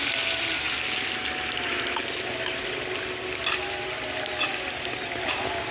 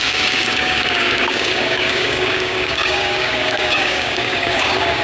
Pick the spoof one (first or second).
second